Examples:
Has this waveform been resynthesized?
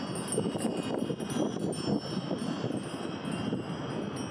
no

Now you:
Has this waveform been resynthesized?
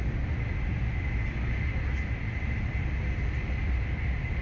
no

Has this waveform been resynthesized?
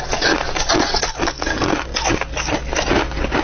no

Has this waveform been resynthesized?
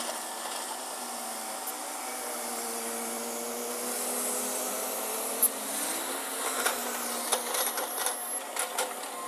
no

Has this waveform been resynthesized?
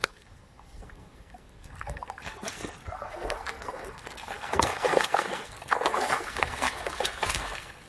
yes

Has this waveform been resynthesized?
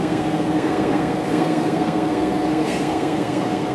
yes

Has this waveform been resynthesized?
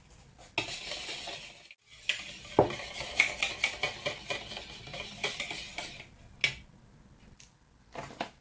no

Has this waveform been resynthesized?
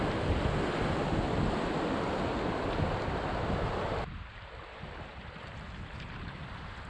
no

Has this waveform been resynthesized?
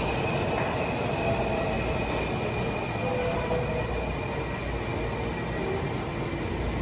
no